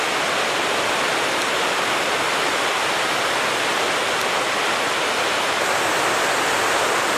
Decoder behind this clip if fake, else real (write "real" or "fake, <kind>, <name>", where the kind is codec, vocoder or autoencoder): real